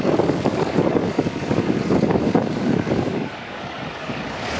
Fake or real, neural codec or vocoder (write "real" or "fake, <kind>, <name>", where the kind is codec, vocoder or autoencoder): fake, codec, DAC